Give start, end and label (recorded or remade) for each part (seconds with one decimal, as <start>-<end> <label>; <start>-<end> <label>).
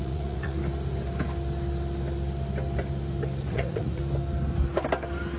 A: 0.0-0.6 remade; 0.6-3.5 recorded; 3.5-4.0 remade; 4.0-5.4 recorded